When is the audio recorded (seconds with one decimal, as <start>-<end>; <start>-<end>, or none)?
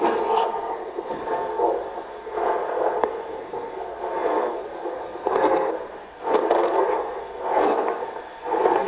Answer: none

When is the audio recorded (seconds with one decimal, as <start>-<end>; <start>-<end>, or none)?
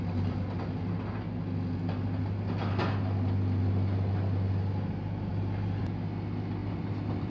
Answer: 0.0-6.6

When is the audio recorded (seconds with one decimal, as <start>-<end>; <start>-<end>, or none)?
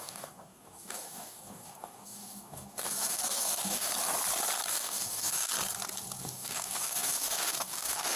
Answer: 3.9-4.7; 5.5-6.2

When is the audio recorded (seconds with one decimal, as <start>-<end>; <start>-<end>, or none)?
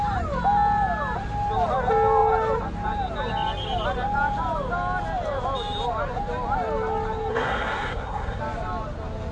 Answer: 0.0-7.3; 8.4-9.3